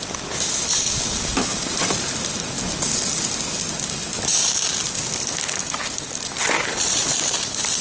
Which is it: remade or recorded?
recorded